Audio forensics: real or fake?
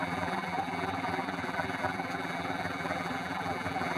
fake